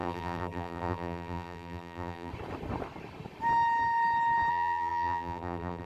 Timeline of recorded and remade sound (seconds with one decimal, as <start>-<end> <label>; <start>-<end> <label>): 0.0-2.3 remade; 2.3-4.5 recorded; 4.5-5.8 remade